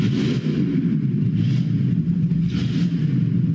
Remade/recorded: recorded